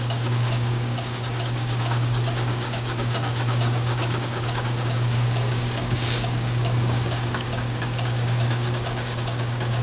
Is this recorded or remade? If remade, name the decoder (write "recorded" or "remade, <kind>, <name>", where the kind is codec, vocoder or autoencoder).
remade, codec, DAC